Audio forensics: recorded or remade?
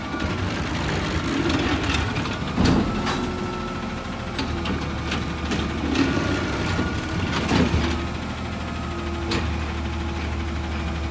recorded